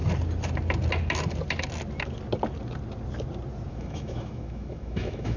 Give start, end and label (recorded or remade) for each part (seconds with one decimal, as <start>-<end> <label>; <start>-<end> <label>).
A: 0.0-3.7 recorded; 3.7-5.4 remade